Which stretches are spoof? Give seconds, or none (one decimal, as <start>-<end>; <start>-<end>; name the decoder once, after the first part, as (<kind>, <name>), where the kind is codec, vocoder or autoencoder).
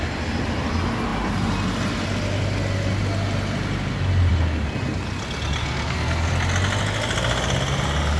5.6-6.3 (codec, SNAC)